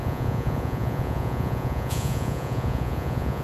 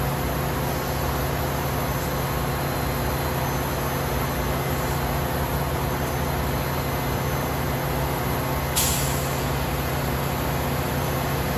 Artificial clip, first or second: first